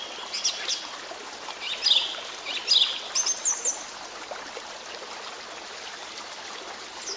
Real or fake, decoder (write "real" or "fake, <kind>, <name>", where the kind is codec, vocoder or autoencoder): real